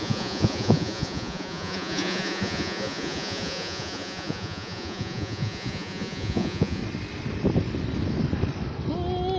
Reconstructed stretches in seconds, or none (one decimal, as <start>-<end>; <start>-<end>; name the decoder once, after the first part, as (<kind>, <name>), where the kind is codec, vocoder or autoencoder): 0.0-6.8 (vocoder, Vocos)